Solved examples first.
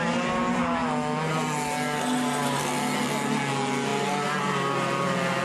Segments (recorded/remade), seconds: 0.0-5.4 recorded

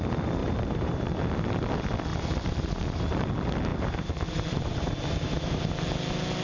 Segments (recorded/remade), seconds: 0.0-0.4 recorded; 0.4-1.2 remade; 1.2-2.1 recorded; 2.1-3.3 remade; 3.3-3.7 recorded; 3.7-5.6 remade; 5.6-6.4 recorded

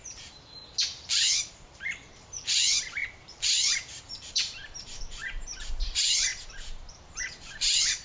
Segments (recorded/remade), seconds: 0.0-0.6 remade; 0.6-1.5 recorded; 1.5-4.6 remade; 4.6-5.2 recorded; 5.2-6.3 remade; 6.3-6.9 recorded; 6.9-8.0 remade

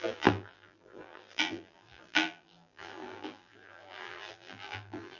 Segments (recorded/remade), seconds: 0.0-5.2 remade